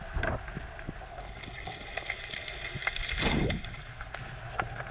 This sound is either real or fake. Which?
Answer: real